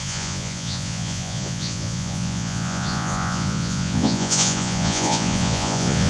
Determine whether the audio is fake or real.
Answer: fake